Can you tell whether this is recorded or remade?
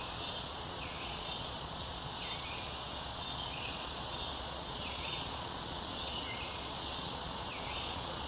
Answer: remade